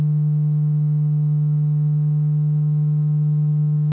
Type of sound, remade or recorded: recorded